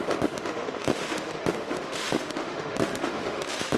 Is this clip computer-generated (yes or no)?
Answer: yes